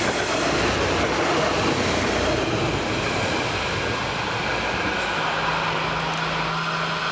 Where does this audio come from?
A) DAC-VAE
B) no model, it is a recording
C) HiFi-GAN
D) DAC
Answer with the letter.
B